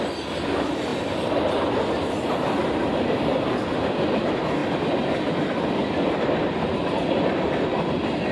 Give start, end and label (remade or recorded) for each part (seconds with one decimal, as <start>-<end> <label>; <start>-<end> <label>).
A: 0.0-8.3 recorded